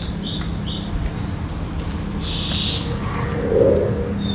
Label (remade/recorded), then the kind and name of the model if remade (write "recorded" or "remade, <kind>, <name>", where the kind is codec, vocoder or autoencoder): recorded